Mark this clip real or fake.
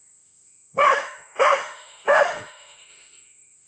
fake